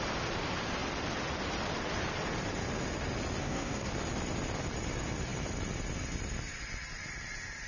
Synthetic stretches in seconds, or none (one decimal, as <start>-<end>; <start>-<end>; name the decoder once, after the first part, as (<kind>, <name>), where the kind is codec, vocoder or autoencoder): 3.4-3.9 (codec, SNAC)